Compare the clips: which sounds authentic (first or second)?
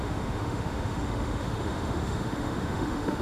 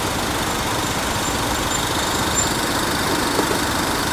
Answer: second